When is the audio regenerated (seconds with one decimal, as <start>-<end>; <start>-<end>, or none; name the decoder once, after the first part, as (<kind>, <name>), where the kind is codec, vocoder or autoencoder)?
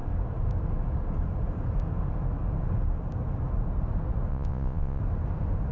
4.3-5.0 (vocoder, Vocos)